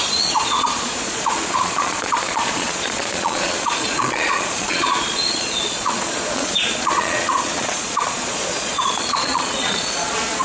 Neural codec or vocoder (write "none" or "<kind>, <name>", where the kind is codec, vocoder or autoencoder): vocoder, Vocos